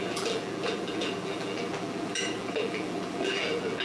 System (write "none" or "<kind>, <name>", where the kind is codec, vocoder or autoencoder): vocoder, BigVGAN v2